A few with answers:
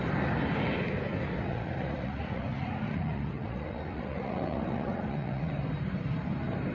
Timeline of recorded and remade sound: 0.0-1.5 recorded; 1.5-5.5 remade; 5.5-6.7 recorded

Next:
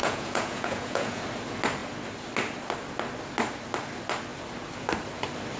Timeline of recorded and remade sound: 0.0-1.2 remade; 1.2-5.6 recorded

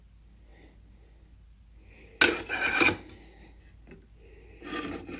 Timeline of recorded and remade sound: 0.0-5.2 recorded

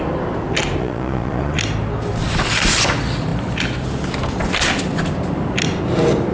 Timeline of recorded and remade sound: 0.0-0.8 recorded; 0.8-1.6 remade; 1.6-6.3 recorded

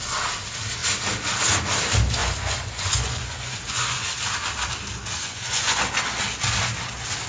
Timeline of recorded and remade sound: 0.0-2.2 recorded; 2.2-4.1 remade; 4.1-5.2 recorded; 5.2-5.8 remade; 5.8-7.3 recorded